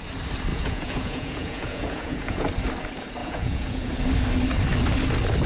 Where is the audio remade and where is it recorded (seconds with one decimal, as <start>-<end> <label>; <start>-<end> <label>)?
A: 0.0-0.5 recorded; 0.5-2.5 remade; 2.5-3.2 recorded; 3.2-4.0 remade; 4.0-5.5 recorded